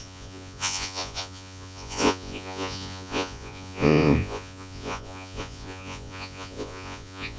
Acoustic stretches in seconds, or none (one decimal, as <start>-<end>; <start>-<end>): none